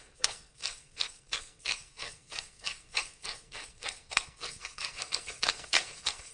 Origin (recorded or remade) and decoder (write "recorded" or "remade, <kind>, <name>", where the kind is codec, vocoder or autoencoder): remade, codec, SNAC